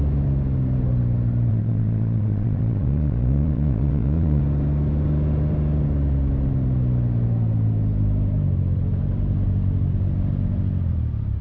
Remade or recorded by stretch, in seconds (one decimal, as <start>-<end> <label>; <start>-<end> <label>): 0.0-1.5 recorded; 1.5-4.4 remade; 4.4-11.4 recorded